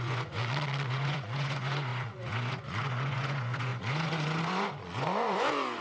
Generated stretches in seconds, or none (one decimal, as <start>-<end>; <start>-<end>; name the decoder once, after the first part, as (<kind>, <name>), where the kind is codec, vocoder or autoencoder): 0.0-0.4 (vocoder, Vocos); 0.9-5.8